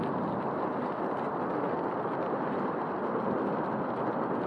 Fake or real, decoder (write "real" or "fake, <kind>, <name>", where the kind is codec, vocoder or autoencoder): real